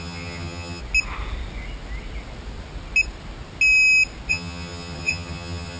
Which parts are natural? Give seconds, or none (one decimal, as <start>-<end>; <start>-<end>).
0.8-4.3